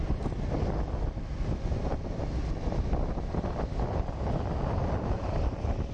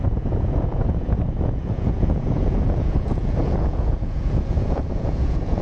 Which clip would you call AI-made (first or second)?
second